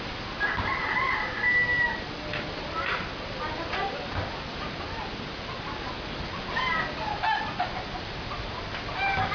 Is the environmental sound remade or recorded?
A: recorded